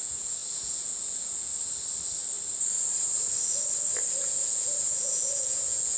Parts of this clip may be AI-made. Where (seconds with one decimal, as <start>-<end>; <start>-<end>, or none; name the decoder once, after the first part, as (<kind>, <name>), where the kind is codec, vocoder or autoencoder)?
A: 0.0-1.5 (vocoder, Vocos); 4.1-6.0